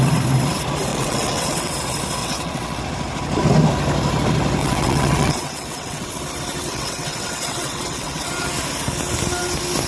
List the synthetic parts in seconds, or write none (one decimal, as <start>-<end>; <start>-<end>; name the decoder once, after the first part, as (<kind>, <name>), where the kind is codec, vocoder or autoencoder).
0.9-1.7 (vocoder, WaveNeXt); 2.2-2.8; 4.6-6.1; 6.6-8.3

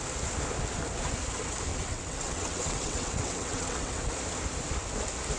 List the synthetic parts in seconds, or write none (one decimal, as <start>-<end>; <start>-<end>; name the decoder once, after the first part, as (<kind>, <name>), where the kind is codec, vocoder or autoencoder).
1.7-4.0 (vocoder, WaveNeXt)

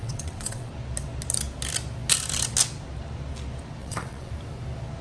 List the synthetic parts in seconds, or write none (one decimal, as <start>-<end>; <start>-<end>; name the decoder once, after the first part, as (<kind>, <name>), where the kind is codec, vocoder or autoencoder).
0.0-0.7 (vocoder, WaveNeXt); 3.8-4.3

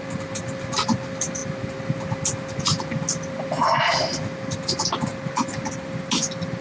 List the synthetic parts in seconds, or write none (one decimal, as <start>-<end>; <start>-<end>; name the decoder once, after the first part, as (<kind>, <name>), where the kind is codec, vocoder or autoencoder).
none